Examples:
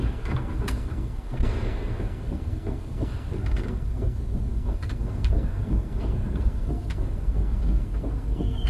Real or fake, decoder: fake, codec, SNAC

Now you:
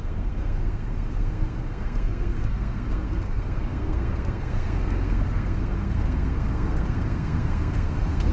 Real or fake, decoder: fake, codec, SNAC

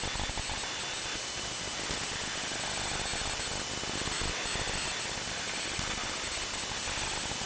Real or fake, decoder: real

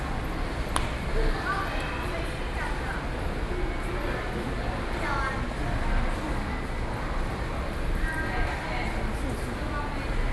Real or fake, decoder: real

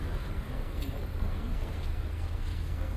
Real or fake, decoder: fake, codec, SNAC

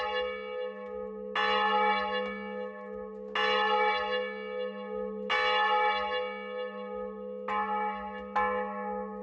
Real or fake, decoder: real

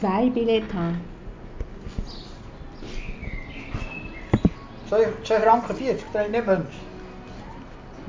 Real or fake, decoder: real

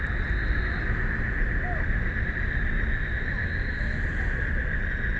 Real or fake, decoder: real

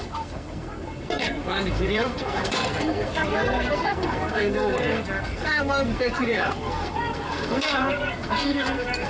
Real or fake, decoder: fake, codec, SNAC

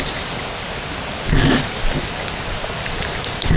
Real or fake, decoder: real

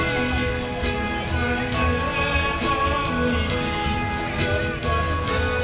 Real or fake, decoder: real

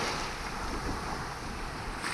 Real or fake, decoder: real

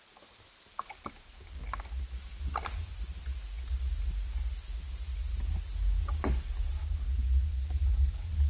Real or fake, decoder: real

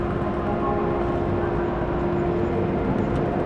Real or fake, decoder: real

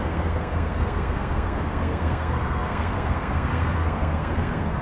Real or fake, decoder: fake, codec, SNAC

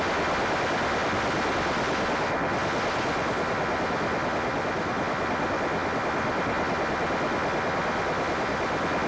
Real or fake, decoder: real